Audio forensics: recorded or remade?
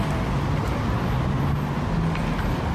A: recorded